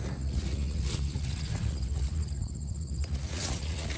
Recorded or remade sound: remade